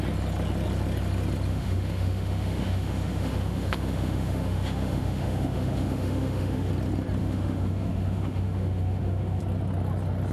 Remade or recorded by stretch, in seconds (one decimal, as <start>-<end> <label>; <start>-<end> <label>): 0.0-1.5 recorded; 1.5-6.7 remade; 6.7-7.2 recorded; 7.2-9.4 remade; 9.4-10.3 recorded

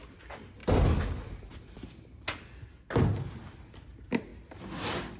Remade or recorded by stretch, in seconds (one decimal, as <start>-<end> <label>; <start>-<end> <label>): 0.0-5.2 recorded

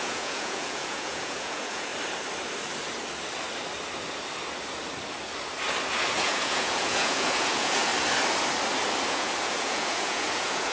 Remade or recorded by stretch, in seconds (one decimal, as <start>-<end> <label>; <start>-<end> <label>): 0.0-1.9 remade; 1.9-6.2 recorded; 6.2-7.9 remade; 7.9-9.1 recorded; 9.1-10.7 remade